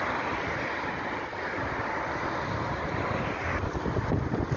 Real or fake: real